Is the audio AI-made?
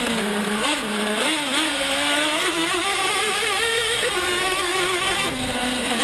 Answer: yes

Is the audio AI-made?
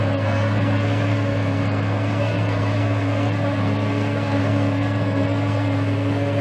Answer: yes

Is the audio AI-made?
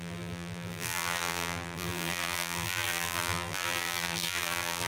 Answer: yes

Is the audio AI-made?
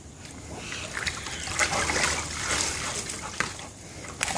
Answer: no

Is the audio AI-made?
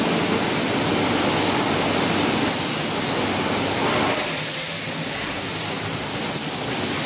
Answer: no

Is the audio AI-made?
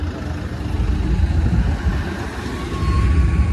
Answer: no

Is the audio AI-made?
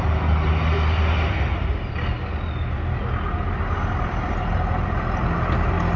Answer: no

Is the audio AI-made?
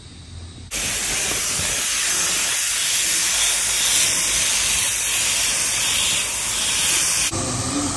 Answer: no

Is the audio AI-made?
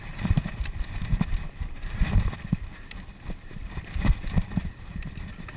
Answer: no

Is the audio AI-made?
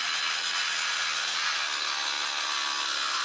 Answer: no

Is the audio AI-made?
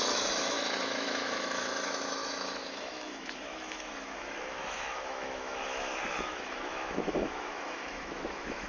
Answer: yes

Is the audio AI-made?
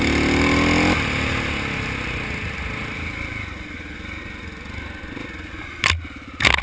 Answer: no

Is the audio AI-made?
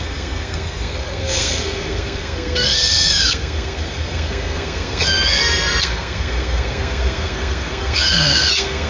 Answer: yes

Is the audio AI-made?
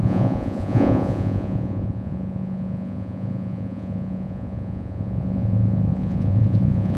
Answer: yes